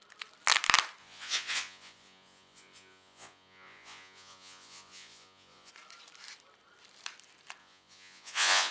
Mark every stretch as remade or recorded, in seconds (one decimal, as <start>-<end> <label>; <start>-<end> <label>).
0.0-1.0 recorded; 1.0-5.7 remade; 5.7-7.6 recorded; 7.6-8.7 remade